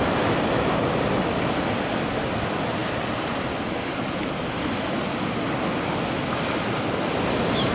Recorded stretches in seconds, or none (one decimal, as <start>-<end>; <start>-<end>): 0.0-7.7